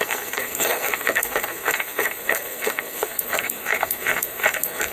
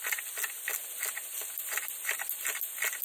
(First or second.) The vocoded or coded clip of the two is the first